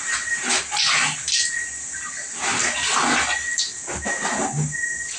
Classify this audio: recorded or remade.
recorded